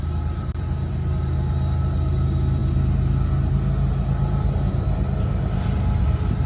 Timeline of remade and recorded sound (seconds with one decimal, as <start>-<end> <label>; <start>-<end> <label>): 0.0-6.5 recorded